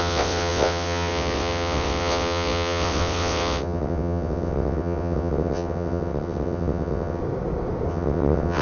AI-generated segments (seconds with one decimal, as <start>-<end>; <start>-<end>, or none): 0.0-7.2; 7.9-8.6